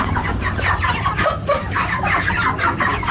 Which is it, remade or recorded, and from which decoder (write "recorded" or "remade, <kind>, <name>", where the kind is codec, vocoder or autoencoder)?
recorded